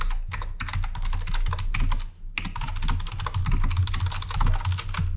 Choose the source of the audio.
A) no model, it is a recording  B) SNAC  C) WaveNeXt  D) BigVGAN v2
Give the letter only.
A